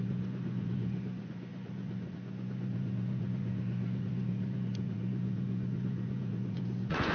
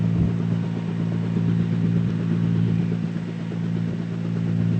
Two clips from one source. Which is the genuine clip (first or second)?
second